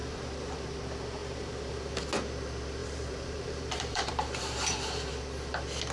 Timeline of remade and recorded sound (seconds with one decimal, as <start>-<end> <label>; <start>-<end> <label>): 0.0-0.6 remade; 0.6-1.2 recorded; 1.2-2.0 remade; 2.0-2.8 recorded; 2.8-5.2 remade; 5.2-5.9 recorded